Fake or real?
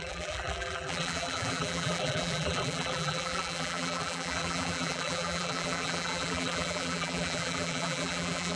fake